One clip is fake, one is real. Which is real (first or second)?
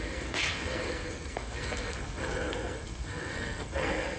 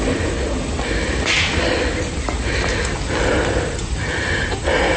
second